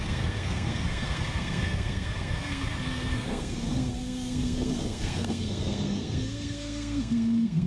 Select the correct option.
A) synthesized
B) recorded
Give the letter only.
A